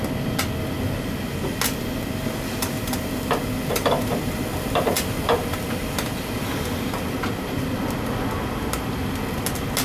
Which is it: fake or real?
real